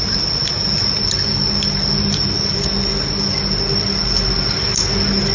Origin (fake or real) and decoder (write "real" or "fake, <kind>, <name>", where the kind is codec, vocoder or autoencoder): real